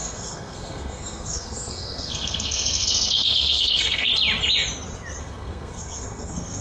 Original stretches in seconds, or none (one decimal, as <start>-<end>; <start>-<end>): 4.1-5.2